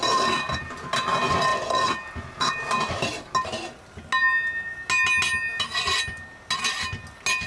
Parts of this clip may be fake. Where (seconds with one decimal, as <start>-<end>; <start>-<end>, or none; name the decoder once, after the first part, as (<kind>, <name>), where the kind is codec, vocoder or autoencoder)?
none